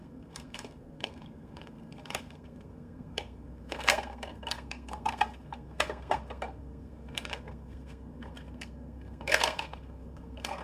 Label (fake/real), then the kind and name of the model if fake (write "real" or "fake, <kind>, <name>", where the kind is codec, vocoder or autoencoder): fake, codec, SNAC